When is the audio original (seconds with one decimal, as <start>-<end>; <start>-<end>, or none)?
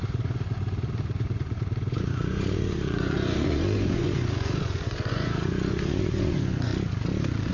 6.7-7.5